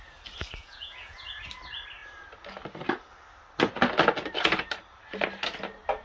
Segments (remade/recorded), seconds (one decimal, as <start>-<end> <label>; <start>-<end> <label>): 0.0-0.6 recorded; 0.6-1.3 remade; 1.3-6.0 recorded

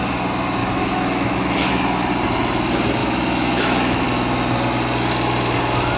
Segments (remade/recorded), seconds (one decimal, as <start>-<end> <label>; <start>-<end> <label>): 0.0-0.6 recorded; 0.6-2.1 remade; 2.1-3.0 recorded; 3.0-4.0 remade; 4.0-6.0 recorded

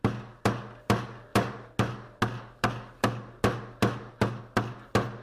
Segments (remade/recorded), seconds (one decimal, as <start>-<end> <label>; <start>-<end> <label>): 0.0-5.2 recorded

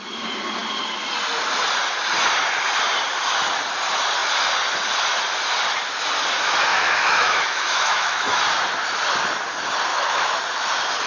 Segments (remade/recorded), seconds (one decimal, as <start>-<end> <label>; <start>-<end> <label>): 0.0-6.7 recorded; 6.7-8.4 remade; 8.4-9.9 recorded; 9.9-10.4 remade; 10.4-11.1 recorded

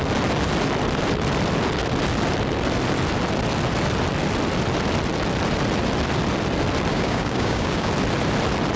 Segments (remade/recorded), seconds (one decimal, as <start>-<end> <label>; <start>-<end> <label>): 0.0-6.9 recorded; 6.9-7.9 remade; 7.9-8.8 recorded

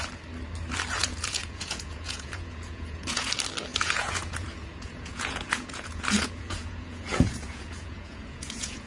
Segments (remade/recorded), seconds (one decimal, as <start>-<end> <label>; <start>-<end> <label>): 0.0-1.0 recorded; 1.0-3.3 remade; 3.3-3.7 recorded; 3.7-8.9 remade